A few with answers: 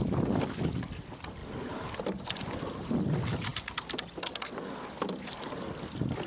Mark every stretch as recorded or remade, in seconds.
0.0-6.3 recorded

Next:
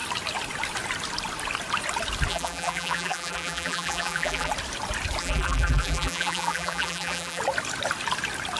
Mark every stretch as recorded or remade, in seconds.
0.0-2.3 recorded; 2.3-4.5 remade; 4.5-5.2 recorded; 5.2-7.4 remade; 7.4-8.6 recorded

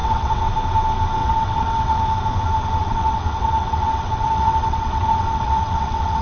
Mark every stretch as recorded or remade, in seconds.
0.0-0.5 remade; 0.5-1.2 recorded; 1.2-2.0 remade; 2.0-2.8 recorded; 2.8-6.2 remade